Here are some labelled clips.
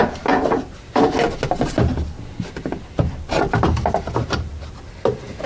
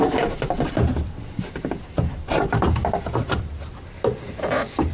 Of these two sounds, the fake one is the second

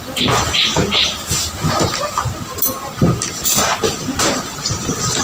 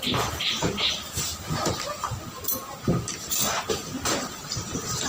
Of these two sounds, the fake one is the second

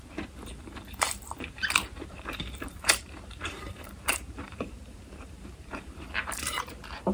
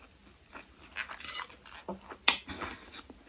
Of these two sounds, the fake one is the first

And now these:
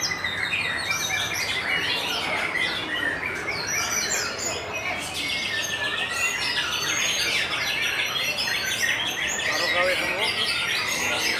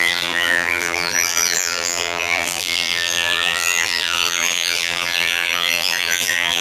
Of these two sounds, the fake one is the second